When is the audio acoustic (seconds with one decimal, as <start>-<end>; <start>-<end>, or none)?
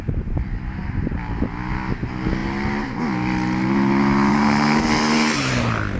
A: 0.0-4.3; 4.8-6.0